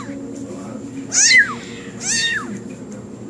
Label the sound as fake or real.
real